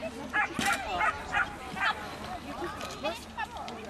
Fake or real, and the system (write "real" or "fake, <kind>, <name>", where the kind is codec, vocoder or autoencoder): real